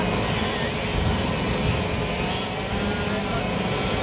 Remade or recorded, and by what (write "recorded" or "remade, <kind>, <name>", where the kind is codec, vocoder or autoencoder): recorded